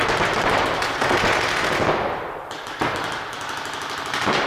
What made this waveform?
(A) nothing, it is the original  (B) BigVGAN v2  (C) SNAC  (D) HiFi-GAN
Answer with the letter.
A